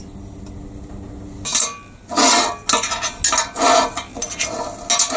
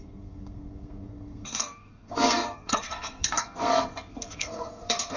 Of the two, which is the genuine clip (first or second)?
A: first